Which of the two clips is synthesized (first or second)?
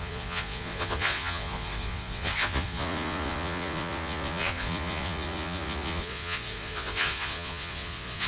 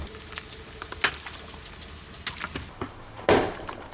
first